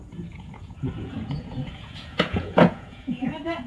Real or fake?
fake